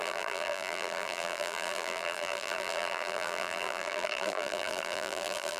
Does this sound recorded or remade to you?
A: remade